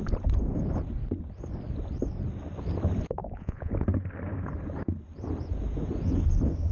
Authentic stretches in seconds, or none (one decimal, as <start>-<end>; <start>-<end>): 0.0-3.2; 3.7-6.7